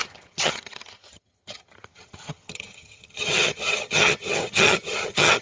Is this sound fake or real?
fake